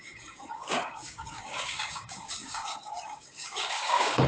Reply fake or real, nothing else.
fake